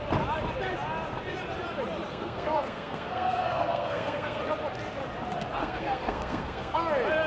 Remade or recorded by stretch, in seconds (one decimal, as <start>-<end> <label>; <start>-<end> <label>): 0.0-2.1 recorded; 2.1-4.4 remade; 4.4-5.6 recorded; 5.6-6.8 remade; 6.8-7.3 recorded